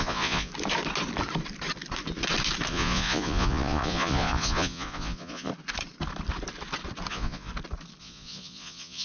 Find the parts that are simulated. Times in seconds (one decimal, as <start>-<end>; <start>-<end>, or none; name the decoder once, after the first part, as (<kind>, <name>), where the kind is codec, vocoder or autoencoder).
0.0-0.5 (vocoder, Vocos); 2.7-5.5; 7.1-7.5; 8.0-9.0